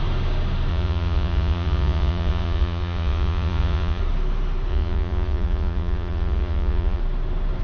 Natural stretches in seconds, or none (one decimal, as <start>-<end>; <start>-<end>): 0.0-0.7; 4.0-4.7; 7.0-7.6